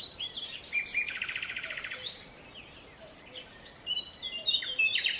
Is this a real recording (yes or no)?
yes